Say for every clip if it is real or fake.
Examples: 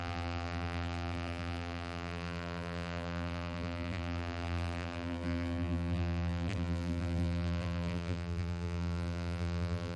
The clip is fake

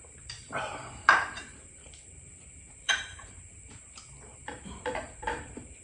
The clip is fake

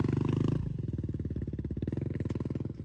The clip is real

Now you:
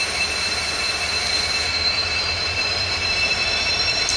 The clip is fake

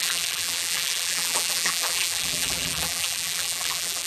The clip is fake